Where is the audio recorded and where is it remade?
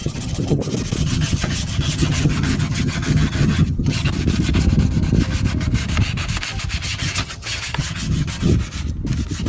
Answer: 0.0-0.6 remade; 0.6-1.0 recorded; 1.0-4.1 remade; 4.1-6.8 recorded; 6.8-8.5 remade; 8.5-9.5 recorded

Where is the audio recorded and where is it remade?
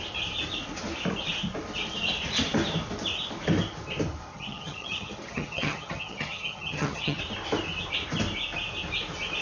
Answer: 0.0-4.3 recorded; 4.3-7.2 remade; 7.2-9.4 recorded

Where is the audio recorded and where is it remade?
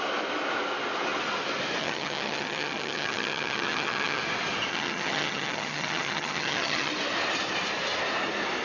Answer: 0.0-1.8 recorded; 1.8-4.2 remade; 4.2-4.7 recorded; 4.7-6.9 remade; 6.9-8.6 recorded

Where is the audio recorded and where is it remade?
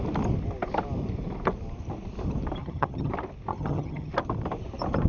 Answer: 0.0-2.6 recorded; 2.6-3.1 remade; 3.1-3.5 recorded; 3.5-4.1 remade; 4.1-5.1 recorded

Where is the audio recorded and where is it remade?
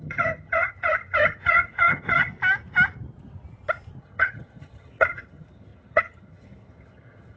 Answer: 0.0-2.3 remade; 2.3-4.0 recorded; 4.0-7.4 remade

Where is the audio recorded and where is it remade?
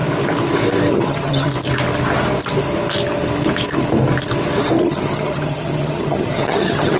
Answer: 0.0-0.9 recorded; 0.9-1.5 remade; 1.5-4.8 recorded; 4.8-7.0 remade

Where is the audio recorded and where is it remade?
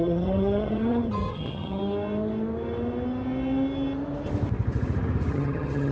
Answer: 0.0-1.8 remade; 1.8-5.3 recorded; 5.3-5.9 remade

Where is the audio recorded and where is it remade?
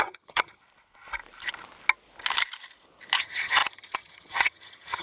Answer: 0.0-0.6 remade; 0.6-3.2 recorded; 3.2-5.0 remade